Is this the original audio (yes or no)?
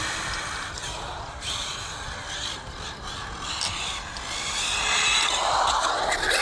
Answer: yes